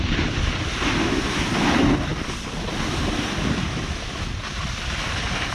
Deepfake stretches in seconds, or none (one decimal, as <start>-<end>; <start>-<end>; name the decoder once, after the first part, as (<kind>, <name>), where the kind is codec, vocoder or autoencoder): none